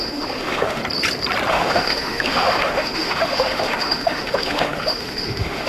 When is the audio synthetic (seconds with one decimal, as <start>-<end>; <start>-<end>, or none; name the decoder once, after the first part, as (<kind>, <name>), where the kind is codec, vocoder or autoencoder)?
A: 0.0-0.8 (autoencoder, DAC-VAE); 1.5-5.7